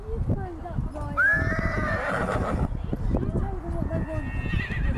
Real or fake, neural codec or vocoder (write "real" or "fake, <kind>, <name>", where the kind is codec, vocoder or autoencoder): real